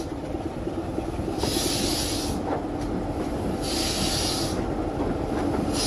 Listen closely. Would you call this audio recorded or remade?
recorded